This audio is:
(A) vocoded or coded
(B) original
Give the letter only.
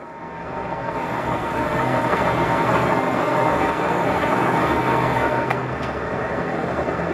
A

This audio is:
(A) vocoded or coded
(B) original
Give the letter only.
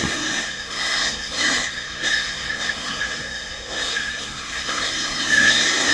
A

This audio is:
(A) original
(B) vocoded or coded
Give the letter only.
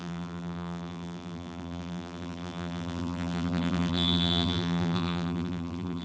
B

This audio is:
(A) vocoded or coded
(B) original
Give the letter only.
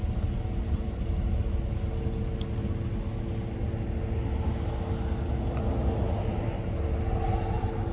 B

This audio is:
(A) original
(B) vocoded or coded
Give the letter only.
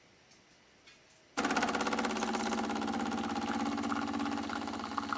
A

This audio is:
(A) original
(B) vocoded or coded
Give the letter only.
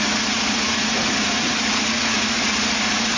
B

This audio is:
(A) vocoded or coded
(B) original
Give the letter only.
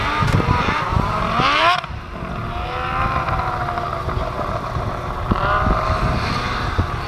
A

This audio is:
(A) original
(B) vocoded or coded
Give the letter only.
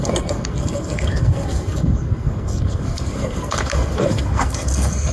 B